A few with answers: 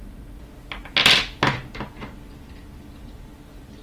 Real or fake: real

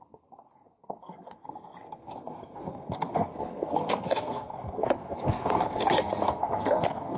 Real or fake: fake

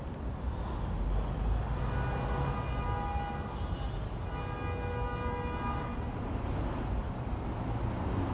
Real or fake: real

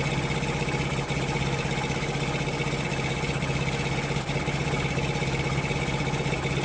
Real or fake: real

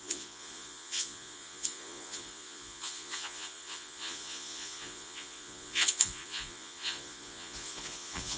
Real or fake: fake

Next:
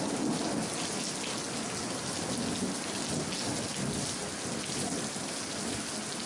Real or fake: real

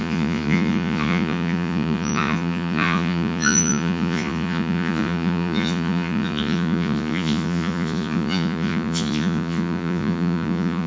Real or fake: fake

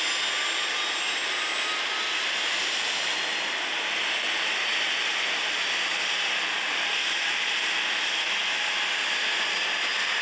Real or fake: real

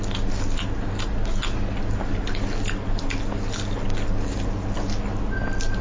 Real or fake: real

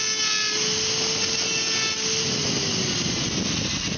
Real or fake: real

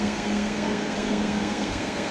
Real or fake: fake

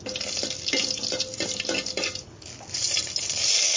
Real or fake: real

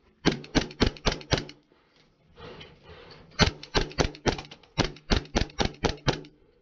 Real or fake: fake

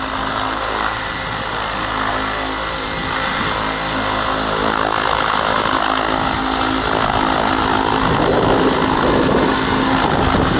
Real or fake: real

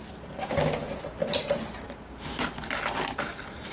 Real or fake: real